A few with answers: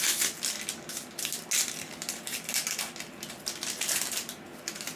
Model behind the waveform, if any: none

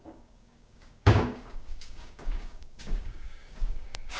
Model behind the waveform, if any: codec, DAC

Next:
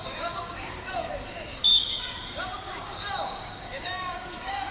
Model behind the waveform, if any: codec, DAC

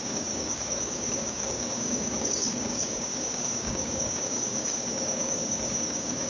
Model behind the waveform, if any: codec, DAC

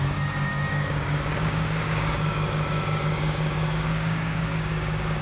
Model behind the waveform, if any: codec, DAC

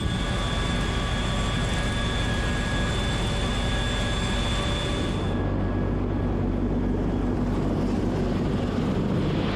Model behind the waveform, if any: none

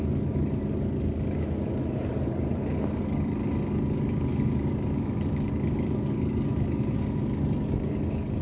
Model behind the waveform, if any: codec, DAC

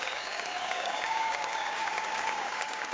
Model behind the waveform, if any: codec, DAC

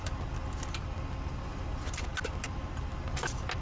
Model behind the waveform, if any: none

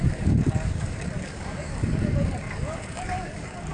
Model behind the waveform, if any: codec, DAC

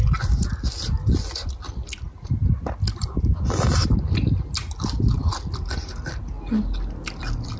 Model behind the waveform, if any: none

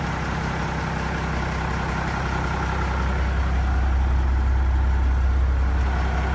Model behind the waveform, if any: none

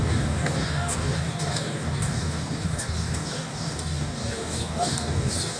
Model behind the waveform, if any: codec, DAC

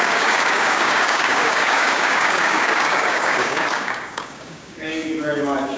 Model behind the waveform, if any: codec, DAC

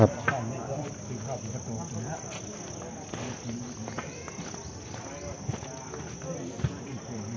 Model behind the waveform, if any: none